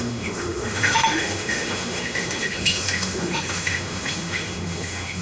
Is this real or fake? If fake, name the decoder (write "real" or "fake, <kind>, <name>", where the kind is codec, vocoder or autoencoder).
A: fake, autoencoder, DAC-VAE